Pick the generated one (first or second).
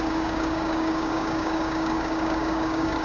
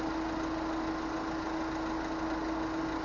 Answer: first